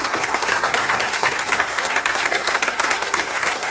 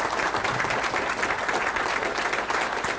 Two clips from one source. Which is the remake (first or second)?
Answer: first